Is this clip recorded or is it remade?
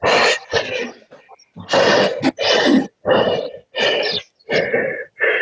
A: recorded